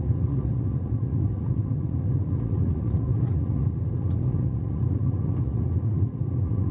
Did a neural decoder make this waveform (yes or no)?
yes